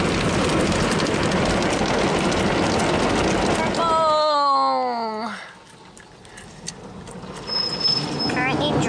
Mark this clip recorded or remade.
recorded